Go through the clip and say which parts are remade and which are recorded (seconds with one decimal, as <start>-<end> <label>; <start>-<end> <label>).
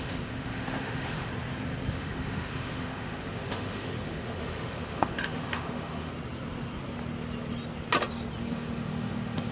0.0-1.3 remade; 1.3-1.9 recorded; 1.9-6.1 remade; 6.1-8.4 recorded; 8.4-9.5 remade